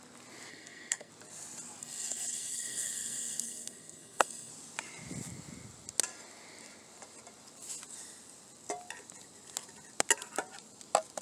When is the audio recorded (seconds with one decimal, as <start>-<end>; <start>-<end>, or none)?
0.0-0.5; 1.1-1.8; 4.5-11.2